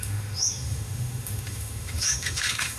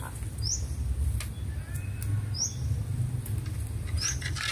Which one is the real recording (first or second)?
second